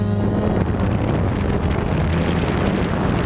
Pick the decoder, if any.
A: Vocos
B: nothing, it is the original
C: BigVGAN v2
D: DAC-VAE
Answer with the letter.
B